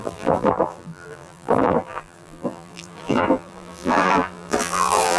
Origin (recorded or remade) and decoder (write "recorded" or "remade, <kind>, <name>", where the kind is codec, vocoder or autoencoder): remade, vocoder, BigVGAN v2